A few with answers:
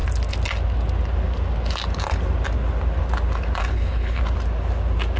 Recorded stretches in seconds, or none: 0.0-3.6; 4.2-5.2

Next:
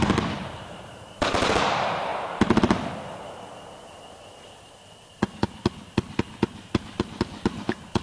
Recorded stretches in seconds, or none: 2.1-6.8

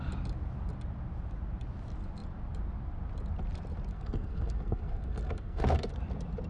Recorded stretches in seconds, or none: 0.0-3.9; 5.9-6.5

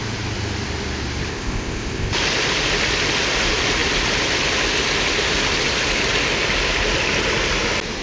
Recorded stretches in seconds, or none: 0.0-1.3; 2.1-8.0

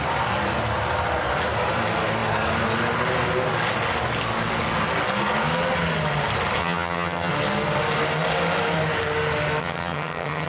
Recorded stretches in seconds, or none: 0.0-6.6; 7.3-9.6

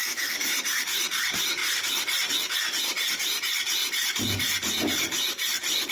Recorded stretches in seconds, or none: 0.6-3.8

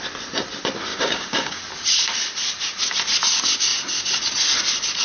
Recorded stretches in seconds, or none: 0.0-0.9; 1.6-5.0